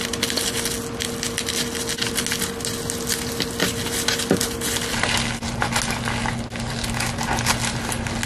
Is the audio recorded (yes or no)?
yes